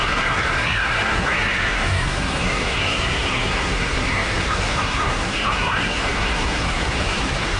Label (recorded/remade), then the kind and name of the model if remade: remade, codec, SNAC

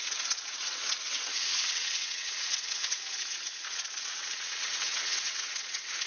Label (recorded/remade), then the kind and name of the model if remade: remade, vocoder, WaveNeXt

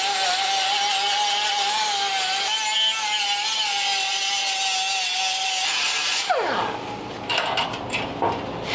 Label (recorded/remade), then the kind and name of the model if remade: recorded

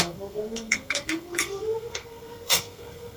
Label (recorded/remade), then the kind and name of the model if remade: remade, codec, SNAC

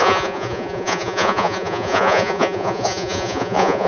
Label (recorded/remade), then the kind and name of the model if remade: remade, vocoder, Vocos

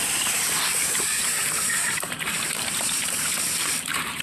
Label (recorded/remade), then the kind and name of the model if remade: remade, vocoder, BigVGAN v2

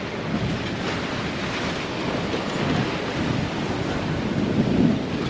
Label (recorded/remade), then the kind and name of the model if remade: recorded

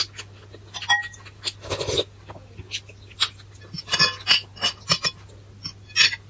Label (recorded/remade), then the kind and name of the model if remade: recorded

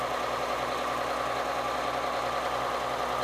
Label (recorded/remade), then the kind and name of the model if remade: recorded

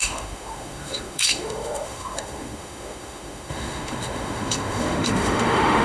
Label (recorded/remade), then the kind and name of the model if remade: remade, autoencoder, DAC-VAE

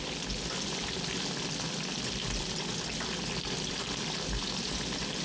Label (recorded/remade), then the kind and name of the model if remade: recorded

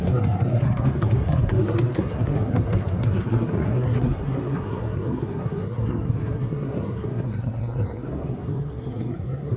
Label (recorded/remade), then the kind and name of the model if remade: remade, codec, SNAC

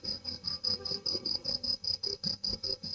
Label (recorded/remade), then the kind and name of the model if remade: remade, codec, SNAC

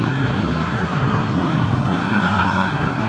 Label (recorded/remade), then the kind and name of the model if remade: remade, codec, SNAC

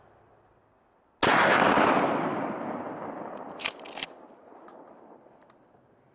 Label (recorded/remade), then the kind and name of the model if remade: recorded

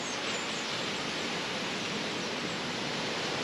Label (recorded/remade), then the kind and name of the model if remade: recorded